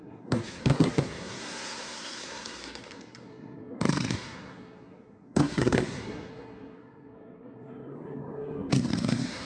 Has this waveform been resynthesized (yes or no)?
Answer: yes